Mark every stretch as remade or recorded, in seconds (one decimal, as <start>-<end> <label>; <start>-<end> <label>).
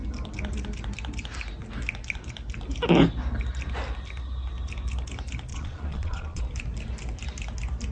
0.0-5.5 recorded; 5.5-6.4 remade; 6.4-7.9 recorded